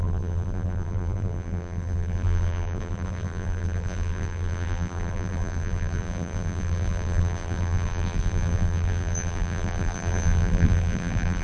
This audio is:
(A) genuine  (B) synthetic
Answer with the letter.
B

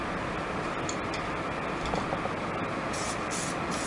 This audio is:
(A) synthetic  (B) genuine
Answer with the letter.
B